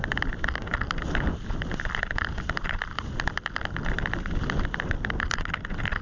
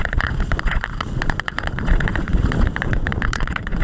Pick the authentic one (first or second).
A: first